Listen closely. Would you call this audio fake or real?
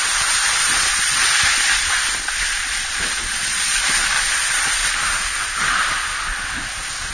real